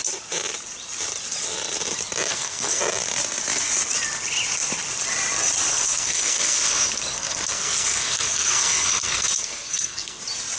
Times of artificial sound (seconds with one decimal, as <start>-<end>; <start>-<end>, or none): 2.3-2.8; 5.7-10.2